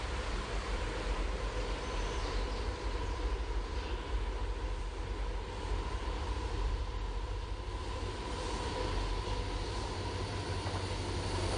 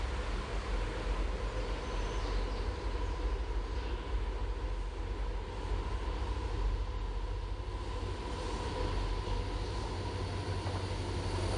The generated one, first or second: first